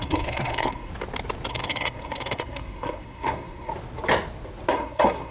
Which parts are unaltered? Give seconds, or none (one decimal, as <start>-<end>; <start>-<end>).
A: 0.9-1.5; 3.7-4.7